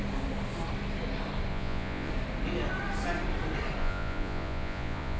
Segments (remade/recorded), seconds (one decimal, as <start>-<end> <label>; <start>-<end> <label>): 0.0-1.5 recorded; 1.5-2.1 remade; 2.1-3.8 recorded; 3.8-5.2 remade